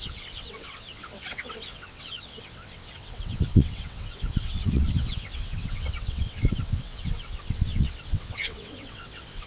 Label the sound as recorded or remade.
remade